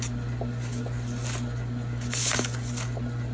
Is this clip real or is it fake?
real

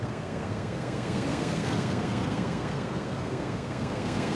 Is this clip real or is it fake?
fake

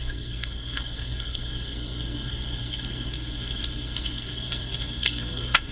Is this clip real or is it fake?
fake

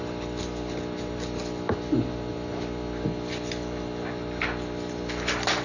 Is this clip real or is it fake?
real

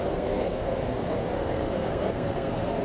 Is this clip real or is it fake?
fake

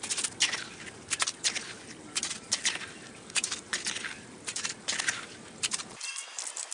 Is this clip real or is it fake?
real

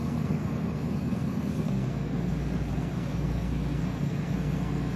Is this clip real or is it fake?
fake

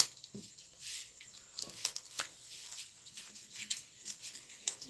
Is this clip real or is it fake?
fake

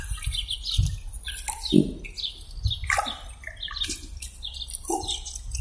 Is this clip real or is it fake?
real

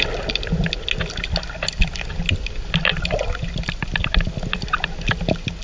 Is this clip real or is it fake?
real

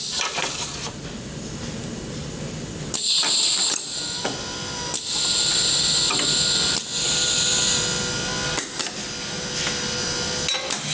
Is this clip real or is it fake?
real